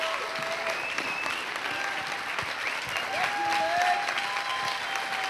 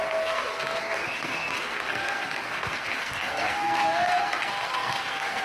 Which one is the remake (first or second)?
second